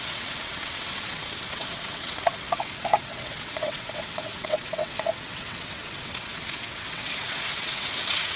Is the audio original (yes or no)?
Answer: no